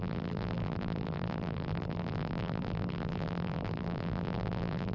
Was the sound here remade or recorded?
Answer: remade